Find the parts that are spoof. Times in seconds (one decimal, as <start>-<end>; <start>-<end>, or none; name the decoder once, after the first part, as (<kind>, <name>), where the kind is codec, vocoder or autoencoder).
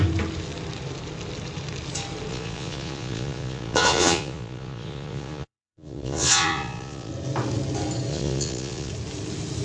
2.3-7.1 (vocoder, Vocos); 8.1-8.9